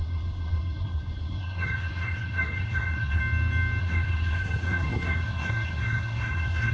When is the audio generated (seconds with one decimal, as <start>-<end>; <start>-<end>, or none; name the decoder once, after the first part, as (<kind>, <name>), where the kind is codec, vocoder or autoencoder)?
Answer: 0.0-3.2 (codec, SNAC); 3.8-6.7